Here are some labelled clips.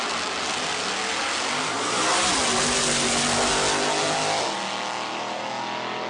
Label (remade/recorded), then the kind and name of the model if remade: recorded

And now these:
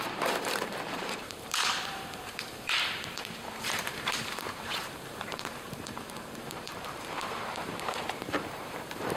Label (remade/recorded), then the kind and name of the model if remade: remade, vocoder, BigVGAN v2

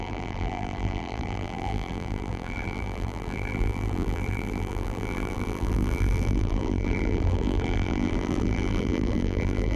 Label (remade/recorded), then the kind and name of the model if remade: remade, vocoder, BigVGAN v2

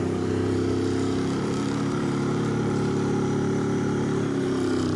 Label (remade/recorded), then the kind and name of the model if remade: remade, vocoder, BigVGAN v2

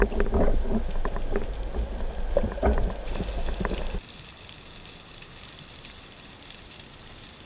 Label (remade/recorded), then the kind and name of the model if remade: recorded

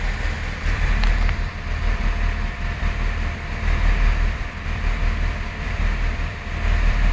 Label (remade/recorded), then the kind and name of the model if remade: remade, vocoder, BigVGAN v2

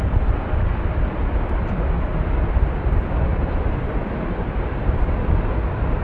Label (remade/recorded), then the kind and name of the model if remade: remade, vocoder, BigVGAN v2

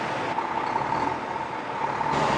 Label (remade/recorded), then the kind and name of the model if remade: recorded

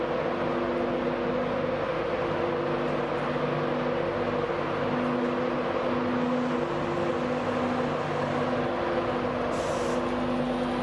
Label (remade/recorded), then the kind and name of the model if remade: recorded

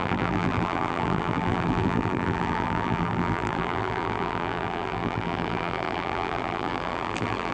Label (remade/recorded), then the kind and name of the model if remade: remade, vocoder, BigVGAN v2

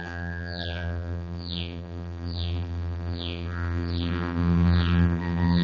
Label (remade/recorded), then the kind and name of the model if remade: remade, vocoder, BigVGAN v2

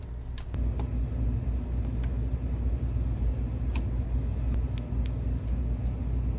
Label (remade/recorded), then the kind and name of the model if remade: recorded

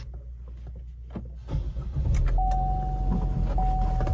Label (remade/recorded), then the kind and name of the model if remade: recorded